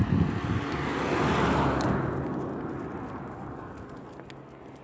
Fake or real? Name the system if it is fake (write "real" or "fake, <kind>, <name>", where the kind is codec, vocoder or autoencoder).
real